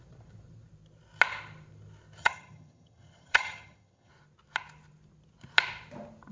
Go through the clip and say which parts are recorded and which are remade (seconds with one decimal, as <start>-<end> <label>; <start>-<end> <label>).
0.0-2.2 recorded; 2.2-4.1 remade; 4.1-6.3 recorded